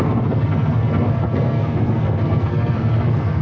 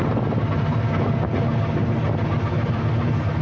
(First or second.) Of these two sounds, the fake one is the first